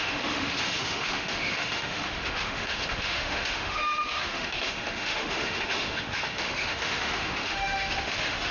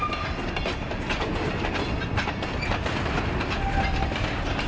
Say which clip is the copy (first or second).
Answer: first